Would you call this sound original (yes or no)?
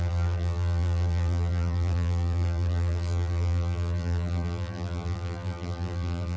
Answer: no